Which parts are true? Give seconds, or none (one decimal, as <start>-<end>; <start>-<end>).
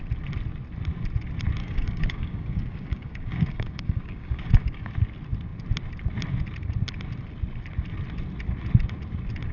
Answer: 0.0-1.6; 4.9-9.5